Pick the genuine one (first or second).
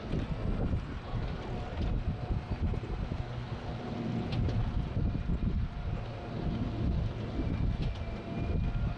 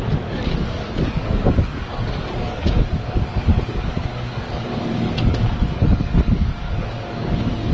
first